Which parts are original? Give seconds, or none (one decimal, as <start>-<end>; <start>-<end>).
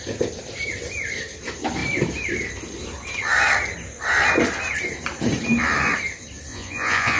0.0-6.5